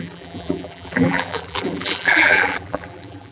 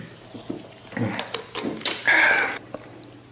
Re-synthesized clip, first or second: first